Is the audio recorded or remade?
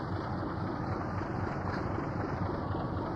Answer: recorded